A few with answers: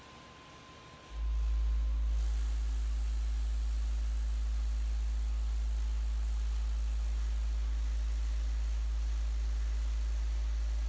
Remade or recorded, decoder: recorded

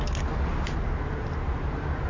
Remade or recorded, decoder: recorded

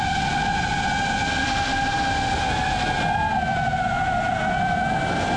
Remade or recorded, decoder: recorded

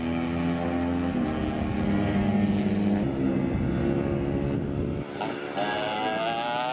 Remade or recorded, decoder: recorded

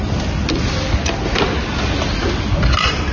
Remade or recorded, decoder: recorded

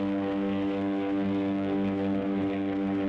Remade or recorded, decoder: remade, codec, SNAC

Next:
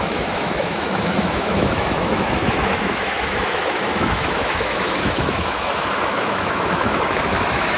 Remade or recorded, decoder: remade, autoencoder, DAC-VAE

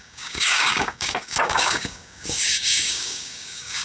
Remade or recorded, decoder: remade, codec, DAC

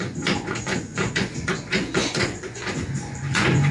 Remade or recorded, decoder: remade, vocoder, Vocos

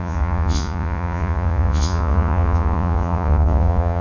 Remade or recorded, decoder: remade, vocoder, Vocos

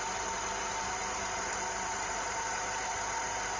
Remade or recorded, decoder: remade, vocoder, BigVGAN v2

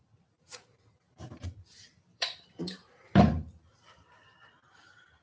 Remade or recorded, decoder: remade, vocoder, BigVGAN v2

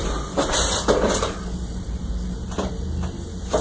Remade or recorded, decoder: remade, vocoder, BigVGAN v2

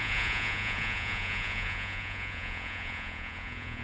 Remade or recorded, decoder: remade, vocoder, Vocos